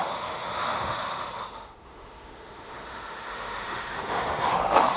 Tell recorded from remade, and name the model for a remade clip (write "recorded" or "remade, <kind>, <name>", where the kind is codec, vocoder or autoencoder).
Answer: remade, autoencoder, DAC-VAE